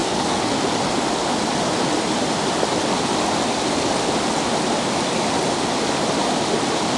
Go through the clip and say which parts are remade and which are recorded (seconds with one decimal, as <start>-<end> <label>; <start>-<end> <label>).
0.0-0.5 remade; 0.5-7.0 recorded